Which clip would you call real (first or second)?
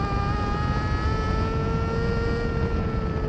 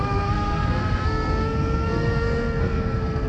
first